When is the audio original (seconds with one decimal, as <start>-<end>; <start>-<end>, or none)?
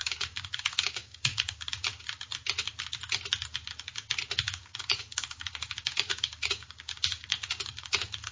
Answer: 1.9-4.4